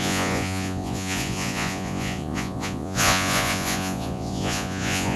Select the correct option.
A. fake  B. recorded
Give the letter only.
A